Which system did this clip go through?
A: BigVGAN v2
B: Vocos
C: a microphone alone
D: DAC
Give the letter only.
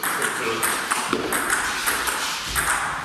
C